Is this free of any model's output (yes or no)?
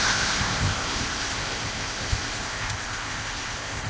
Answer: no